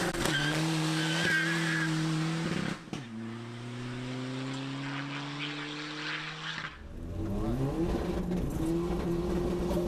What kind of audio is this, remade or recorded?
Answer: recorded